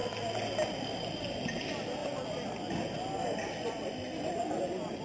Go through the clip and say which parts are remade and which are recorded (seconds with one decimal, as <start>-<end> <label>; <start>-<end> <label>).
0.0-5.0 recorded